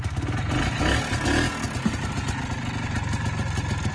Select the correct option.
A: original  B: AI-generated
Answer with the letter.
A